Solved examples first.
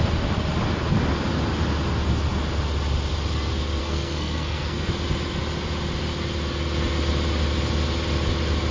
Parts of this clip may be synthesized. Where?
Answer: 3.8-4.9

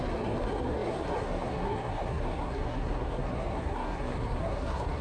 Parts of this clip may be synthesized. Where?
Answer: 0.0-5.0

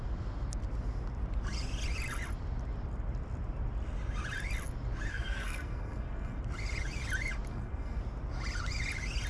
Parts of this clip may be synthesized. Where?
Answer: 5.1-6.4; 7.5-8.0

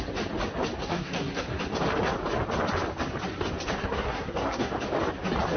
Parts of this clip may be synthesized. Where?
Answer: 0.8-1.6; 3.8-4.7